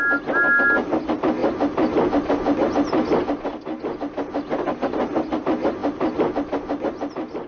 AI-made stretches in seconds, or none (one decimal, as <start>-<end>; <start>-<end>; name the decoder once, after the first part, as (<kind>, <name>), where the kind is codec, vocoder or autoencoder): none